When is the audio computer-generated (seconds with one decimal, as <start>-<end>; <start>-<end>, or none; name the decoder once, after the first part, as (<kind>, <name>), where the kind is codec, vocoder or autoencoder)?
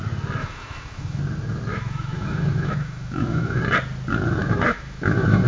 0.4-1.2 (autoencoder, DAC-VAE); 1.7-3.6; 4.4-5.5